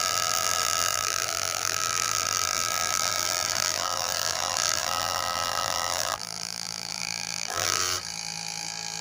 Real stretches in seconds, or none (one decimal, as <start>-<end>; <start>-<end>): 7.8-9.0